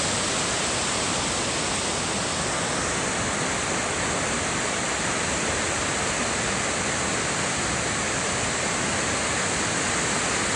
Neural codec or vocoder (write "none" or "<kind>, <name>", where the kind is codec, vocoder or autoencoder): none